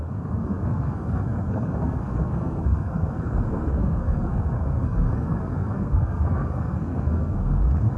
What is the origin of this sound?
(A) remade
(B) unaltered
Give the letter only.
A